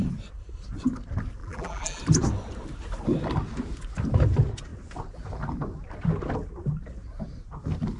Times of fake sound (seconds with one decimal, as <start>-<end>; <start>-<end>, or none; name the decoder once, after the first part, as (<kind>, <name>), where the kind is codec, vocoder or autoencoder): 1.4-2.0 (vocoder, BigVGAN v2)